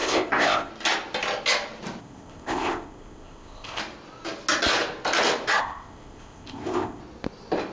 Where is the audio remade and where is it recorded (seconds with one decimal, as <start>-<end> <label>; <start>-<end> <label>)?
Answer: 0.0-0.7 remade; 0.7-2.0 recorded; 2.0-3.8 remade; 3.8-5.6 recorded; 5.6-7.0 remade; 7.0-7.7 recorded